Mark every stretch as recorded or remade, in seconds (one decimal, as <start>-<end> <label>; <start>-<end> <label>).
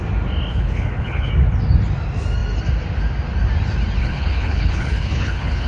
0.0-0.5 recorded; 0.5-1.3 remade; 1.3-4.0 recorded; 4.0-5.7 remade